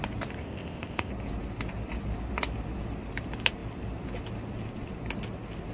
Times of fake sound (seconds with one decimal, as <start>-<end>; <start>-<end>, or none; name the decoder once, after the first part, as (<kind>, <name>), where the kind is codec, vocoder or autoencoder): 0.4-1.1 (codec, ZipCodec)